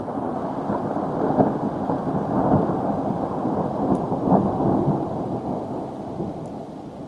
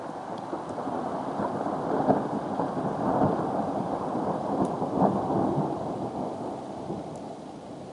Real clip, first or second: first